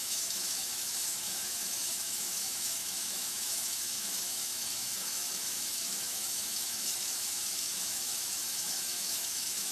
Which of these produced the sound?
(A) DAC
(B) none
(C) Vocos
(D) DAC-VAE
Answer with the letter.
D